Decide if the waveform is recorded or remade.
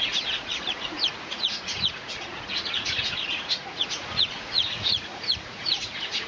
remade